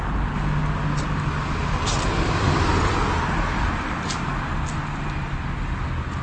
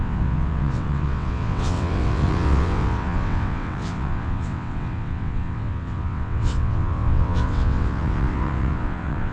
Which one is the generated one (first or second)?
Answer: second